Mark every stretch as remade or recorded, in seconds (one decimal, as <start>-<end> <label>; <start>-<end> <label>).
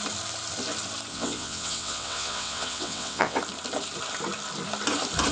0.0-1.1 recorded; 1.1-3.4 remade; 3.4-5.3 recorded